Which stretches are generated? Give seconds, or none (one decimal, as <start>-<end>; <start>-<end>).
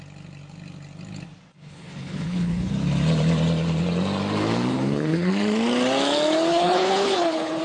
1.5-2.7; 4.7-5.3; 6.5-7.6